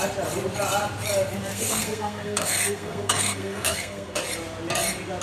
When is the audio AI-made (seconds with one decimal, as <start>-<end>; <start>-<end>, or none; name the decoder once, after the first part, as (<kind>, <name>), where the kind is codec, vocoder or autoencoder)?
1.5-4.2 (codec, SNAC)